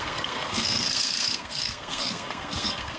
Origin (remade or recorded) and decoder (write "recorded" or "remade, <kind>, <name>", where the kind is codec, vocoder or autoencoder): remade, codec, SNAC